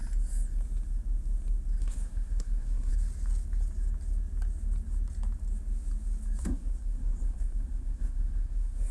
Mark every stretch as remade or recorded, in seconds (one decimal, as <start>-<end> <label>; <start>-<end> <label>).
0.0-1.8 recorded; 1.8-2.9 remade; 2.9-6.4 recorded; 6.4-8.9 remade